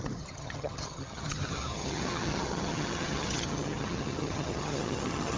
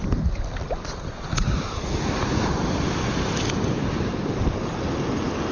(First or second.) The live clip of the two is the second